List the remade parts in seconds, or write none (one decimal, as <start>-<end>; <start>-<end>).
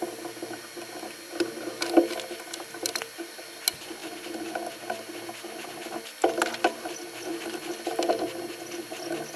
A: none